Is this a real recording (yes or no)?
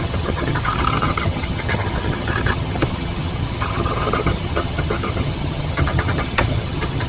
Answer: no